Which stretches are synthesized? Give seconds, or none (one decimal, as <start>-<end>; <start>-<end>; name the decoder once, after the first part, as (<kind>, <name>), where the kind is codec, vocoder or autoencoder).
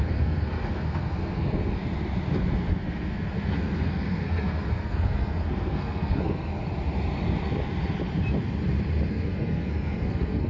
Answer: 0.0-1.8 (codec, SNAC); 2.8-6.5; 9.1-10.5